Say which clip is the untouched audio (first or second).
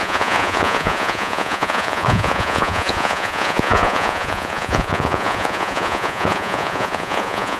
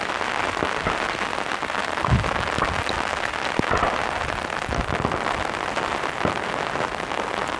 second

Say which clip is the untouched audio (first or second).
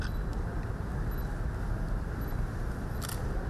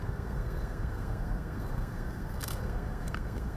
first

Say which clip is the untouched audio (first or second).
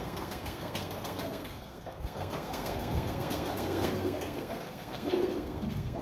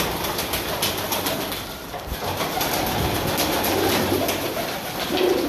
second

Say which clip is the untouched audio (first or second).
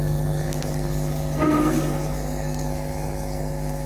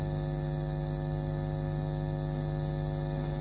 second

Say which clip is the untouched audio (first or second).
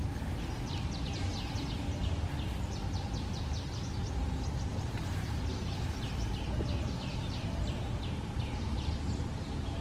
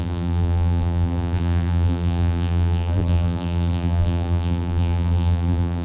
first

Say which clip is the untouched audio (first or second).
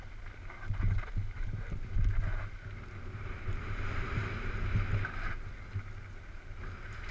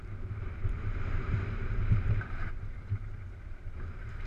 first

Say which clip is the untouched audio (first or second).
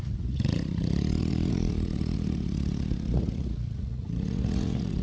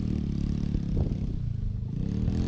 second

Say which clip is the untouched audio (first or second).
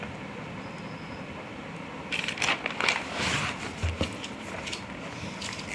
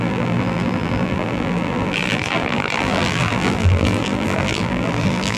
first